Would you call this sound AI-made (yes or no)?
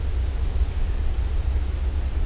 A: no